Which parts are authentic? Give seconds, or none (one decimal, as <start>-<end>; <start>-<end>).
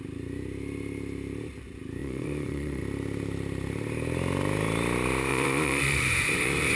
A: 0.0-2.0; 2.8-5.3